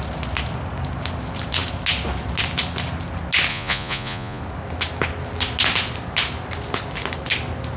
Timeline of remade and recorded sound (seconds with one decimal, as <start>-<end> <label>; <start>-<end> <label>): 0.0-3.5 recorded; 3.5-4.4 remade; 4.4-7.8 recorded